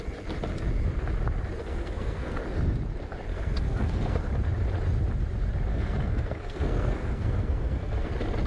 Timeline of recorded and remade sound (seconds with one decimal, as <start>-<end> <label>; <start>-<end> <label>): 0.0-1.6 recorded; 1.6-2.4 remade; 2.4-3.3 recorded; 3.3-4.3 remade; 4.3-5.7 recorded; 5.7-8.1 remade; 8.1-8.5 recorded